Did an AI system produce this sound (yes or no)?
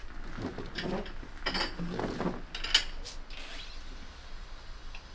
no